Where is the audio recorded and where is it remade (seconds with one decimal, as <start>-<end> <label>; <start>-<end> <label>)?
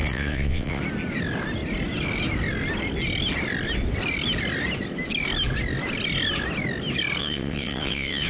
0.0-0.8 remade; 0.8-7.2 recorded; 7.2-8.3 remade